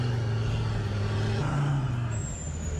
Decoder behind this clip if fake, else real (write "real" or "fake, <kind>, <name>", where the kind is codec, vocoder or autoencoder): real